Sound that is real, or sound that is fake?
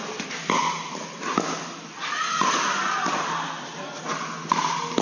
real